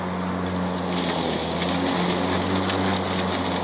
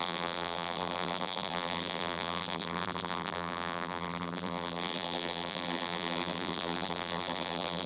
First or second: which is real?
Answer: first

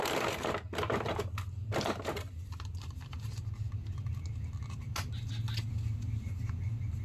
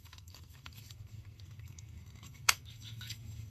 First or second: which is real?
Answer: first